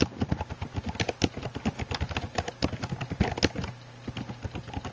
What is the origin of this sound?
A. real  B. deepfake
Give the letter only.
A